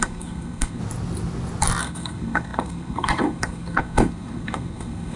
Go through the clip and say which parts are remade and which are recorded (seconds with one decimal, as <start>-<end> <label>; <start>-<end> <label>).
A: 0.0-0.8 remade; 0.8-1.8 recorded; 1.8-5.2 remade